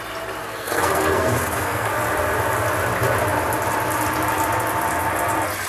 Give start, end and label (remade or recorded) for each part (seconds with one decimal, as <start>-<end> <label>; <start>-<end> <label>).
0.0-0.4 recorded; 0.4-1.9 remade; 1.9-5.7 recorded